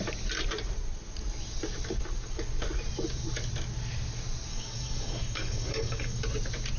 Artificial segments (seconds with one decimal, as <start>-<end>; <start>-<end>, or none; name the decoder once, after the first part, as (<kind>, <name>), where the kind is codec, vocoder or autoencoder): 4.5-6.2 (codec, DAC)